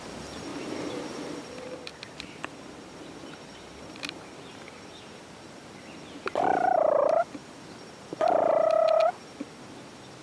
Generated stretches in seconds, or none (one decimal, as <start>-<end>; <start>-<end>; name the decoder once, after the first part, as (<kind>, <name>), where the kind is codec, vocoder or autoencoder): 0.5-4.8 (vocoder, BigVGAN v2)